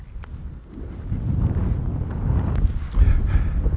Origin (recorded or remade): recorded